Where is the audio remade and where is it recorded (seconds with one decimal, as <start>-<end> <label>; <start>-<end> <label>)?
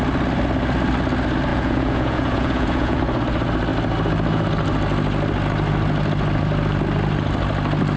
0.0-1.5 recorded; 1.5-3.0 remade; 3.0-8.0 recorded